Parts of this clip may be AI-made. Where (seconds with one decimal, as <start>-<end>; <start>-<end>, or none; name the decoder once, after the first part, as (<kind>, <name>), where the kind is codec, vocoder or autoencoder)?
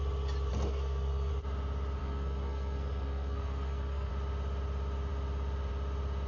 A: 0.5-1.3 (codec, SNAC); 2.0-4.1